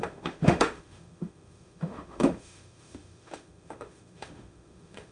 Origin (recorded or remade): remade